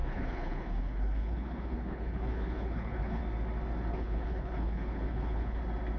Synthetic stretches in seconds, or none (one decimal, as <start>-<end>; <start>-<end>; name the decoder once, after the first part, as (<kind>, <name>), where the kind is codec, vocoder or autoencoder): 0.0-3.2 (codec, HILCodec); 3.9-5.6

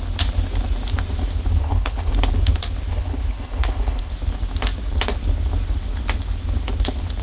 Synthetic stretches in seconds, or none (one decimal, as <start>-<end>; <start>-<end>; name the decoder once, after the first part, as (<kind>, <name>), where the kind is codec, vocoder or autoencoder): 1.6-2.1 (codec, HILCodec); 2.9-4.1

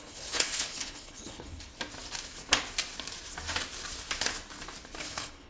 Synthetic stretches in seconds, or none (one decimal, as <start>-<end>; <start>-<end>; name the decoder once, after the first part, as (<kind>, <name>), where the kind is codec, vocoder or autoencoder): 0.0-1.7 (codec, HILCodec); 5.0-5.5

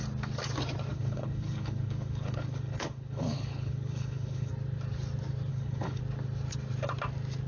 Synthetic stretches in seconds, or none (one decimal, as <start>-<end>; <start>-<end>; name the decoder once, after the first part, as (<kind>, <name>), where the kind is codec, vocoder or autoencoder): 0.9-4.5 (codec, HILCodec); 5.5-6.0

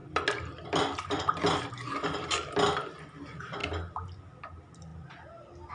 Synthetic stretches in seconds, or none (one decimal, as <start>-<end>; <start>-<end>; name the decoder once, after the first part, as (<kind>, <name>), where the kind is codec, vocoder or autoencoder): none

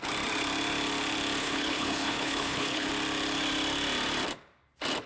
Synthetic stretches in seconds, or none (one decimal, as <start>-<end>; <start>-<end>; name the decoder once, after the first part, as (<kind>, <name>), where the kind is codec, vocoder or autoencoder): 1.4-2.9 (codec, HILCodec)